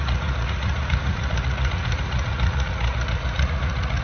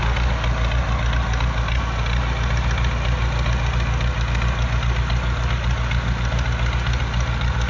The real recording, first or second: second